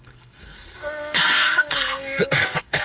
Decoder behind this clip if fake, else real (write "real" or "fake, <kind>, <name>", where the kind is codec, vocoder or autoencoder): fake, codec, SNAC